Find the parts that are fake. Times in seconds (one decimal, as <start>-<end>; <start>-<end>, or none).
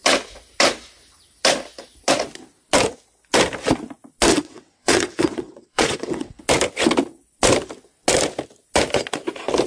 4.3-6.4